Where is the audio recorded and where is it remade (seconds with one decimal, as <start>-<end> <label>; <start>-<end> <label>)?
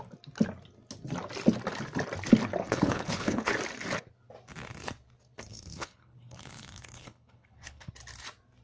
0.0-2.6 recorded; 2.6-3.5 remade; 3.5-5.5 recorded; 5.5-7.9 remade; 7.9-8.6 recorded